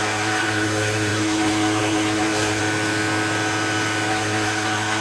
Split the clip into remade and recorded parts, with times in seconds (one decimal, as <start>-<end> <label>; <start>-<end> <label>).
0.0-2.6 remade; 2.6-4.1 recorded; 4.1-5.0 remade